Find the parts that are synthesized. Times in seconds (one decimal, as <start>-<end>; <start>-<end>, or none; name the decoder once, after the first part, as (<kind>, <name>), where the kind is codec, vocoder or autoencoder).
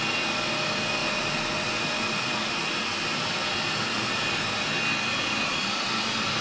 none